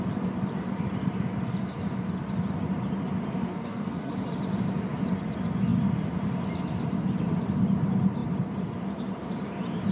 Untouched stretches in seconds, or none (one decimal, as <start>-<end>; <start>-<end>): 0.0-3.5; 4.1-9.9